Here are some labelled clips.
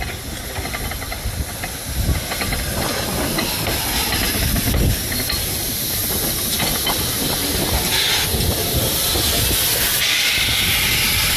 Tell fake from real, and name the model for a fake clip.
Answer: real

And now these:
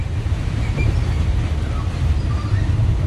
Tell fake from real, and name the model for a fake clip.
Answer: fake, vocoder, BigVGAN v2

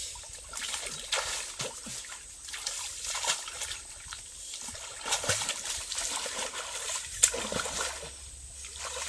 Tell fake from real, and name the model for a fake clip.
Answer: real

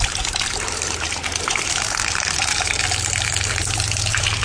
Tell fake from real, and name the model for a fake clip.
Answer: fake, vocoder, BigVGAN v2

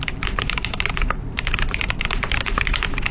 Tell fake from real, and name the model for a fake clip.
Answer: fake, vocoder, BigVGAN v2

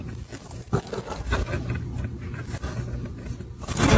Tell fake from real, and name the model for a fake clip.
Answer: real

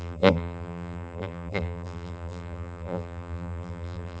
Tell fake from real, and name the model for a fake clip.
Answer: fake, vocoder, BigVGAN v2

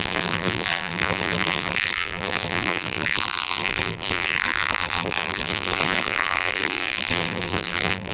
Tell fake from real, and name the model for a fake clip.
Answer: fake, vocoder, BigVGAN v2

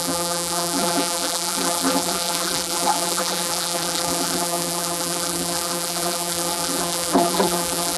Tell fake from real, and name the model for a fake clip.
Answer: fake, vocoder, BigVGAN v2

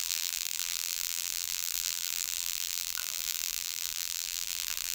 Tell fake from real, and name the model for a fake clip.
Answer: fake, vocoder, BigVGAN v2